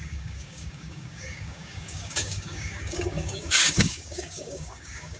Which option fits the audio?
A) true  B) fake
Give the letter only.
B